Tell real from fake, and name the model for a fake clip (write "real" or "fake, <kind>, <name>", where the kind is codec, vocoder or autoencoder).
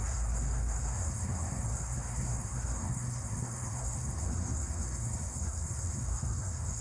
fake, codec, SNAC